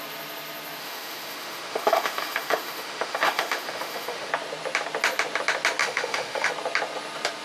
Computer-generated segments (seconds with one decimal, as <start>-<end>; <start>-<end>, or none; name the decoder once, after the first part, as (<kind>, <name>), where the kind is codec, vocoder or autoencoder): 0.8-4.3 (autoencoder, DAC-VAE); 5.8-6.5